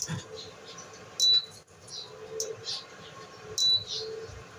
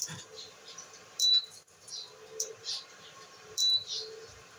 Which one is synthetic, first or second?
second